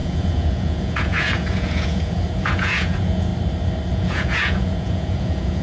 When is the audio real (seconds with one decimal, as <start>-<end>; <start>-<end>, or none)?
3.3-3.9